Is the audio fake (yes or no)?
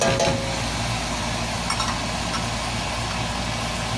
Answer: no